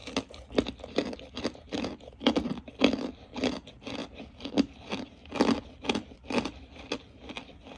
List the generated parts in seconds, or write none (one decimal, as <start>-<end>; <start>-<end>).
none